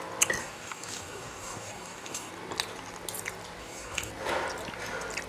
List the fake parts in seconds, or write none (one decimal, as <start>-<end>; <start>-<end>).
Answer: 0.4-2.3; 3.6-4.1